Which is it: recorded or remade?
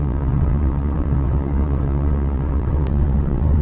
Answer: remade